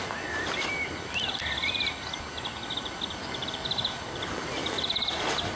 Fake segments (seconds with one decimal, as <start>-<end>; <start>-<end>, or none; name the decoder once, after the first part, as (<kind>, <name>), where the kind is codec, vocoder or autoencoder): none